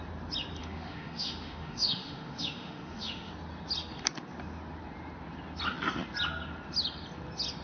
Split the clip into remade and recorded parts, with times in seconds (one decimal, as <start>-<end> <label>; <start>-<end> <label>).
0.0-0.6 recorded; 0.6-3.3 remade; 3.3-7.6 recorded